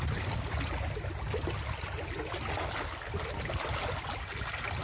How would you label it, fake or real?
real